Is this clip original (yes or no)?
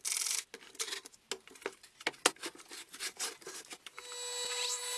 yes